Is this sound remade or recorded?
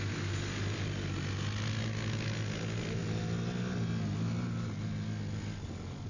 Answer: recorded